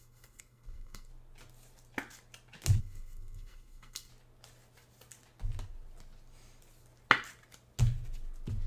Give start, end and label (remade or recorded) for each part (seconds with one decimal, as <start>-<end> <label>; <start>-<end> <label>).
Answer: 0.0-1.1 remade; 1.1-2.8 recorded; 2.8-4.1 remade; 4.1-8.7 recorded